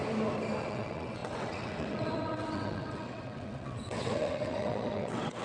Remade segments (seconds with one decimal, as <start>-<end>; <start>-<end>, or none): 0.6-5.4